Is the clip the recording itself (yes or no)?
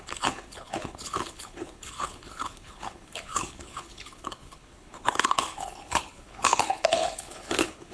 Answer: no